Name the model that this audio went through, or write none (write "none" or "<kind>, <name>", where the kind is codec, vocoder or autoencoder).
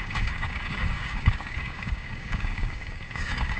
codec, DAC